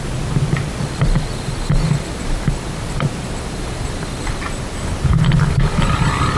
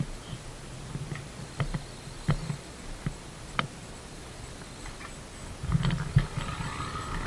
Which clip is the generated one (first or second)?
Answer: first